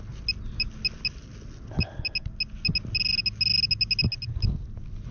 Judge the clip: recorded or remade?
recorded